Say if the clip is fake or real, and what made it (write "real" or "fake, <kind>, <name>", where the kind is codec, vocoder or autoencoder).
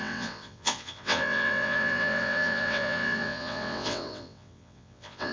fake, vocoder, WaveNeXt